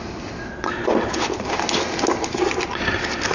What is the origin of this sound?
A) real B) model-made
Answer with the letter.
A